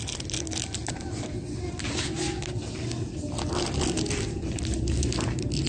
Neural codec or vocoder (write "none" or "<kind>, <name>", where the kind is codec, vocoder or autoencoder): none